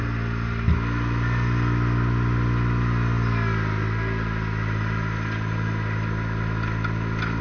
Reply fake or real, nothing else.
real